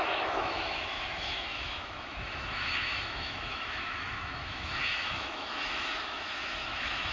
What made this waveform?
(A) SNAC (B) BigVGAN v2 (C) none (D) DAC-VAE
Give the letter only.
D